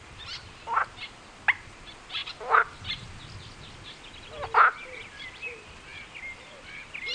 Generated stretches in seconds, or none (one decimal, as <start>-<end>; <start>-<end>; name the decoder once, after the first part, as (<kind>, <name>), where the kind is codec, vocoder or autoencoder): none